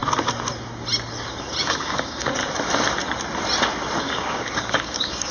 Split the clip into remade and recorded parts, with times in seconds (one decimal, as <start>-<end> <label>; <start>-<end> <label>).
0.0-1.6 recorded; 1.6-2.4 remade; 2.4-4.0 recorded; 4.0-5.3 remade